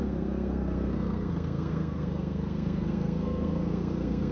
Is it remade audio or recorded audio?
remade